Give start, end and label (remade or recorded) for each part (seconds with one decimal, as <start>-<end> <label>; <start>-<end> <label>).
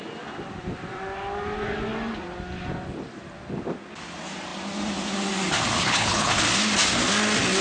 0.0-5.8 recorded; 5.8-6.4 remade; 6.4-7.6 recorded